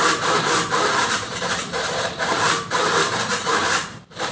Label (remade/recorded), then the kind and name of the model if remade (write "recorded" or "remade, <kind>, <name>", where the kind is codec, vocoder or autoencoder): remade, vocoder, BigVGAN v2